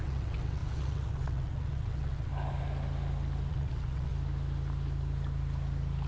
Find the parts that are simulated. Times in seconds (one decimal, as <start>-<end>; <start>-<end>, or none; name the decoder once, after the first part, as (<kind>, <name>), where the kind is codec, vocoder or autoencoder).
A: 0.0-2.3 (vocoder, WaveNeXt); 3.5-4.1

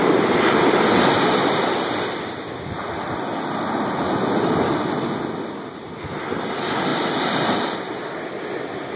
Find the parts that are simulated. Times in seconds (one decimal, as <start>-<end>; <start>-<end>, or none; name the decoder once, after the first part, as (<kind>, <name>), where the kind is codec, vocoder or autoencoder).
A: none

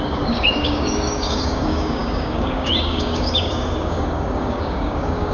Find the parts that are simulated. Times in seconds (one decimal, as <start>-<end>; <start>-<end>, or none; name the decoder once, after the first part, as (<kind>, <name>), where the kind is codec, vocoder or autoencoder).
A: 0.0-5.3 (codec, DAC)

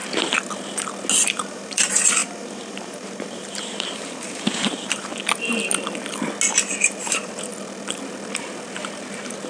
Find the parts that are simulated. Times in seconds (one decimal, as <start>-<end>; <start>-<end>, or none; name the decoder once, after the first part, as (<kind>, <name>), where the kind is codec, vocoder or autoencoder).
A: 1.2-5.1 (vocoder, BigVGAN v2); 7.0-7.5